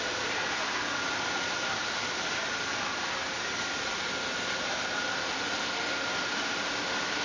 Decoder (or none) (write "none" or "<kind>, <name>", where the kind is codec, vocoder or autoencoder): none